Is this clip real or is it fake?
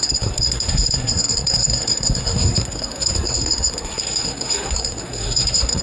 fake